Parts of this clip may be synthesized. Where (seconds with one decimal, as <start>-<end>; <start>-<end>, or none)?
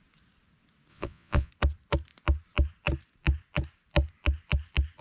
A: 0.9-1.5